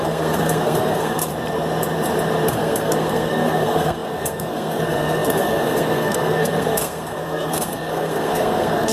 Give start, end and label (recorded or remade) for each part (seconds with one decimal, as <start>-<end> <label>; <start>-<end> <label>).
0.0-1.3 remade; 1.3-2.5 recorded; 2.5-8.9 remade